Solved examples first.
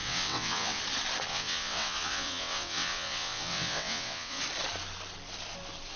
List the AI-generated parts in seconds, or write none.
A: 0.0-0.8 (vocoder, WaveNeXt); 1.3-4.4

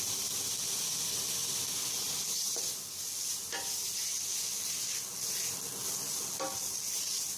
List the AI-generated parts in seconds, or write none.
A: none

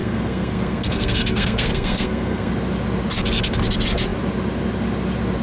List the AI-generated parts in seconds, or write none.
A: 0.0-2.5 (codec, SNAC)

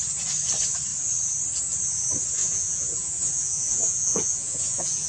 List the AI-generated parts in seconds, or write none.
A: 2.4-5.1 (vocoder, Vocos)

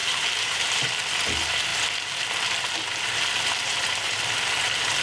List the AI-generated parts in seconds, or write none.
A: 0.0-0.8 (vocoder, BigVGAN v2)

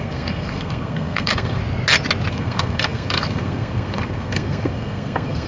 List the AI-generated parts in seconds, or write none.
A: 0.0-1.6 (codec, SNAC); 2.3-5.5

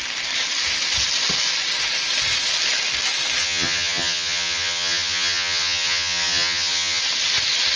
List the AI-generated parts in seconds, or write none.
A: 3.4-7.0 (vocoder, HiFi-GAN)

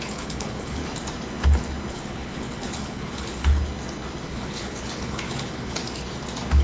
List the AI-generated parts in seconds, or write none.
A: 0.0-0.8 (codec, HILCodec); 1.9-3.6; 4.3-5.8